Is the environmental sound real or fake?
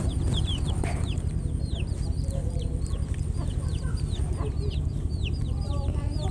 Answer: fake